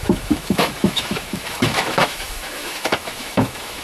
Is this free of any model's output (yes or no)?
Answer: no